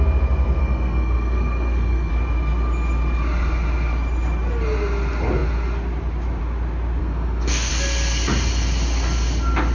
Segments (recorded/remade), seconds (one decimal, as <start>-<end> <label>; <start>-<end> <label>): 0.0-0.6 recorded; 0.6-2.1 remade; 2.1-7.0 recorded; 7.0-7.7 remade; 7.7-9.7 recorded